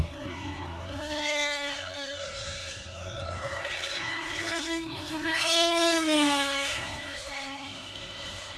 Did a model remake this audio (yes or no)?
yes